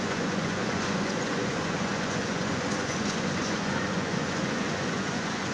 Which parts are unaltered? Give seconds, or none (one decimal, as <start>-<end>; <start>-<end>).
none